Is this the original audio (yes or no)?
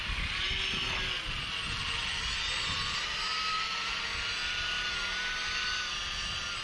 yes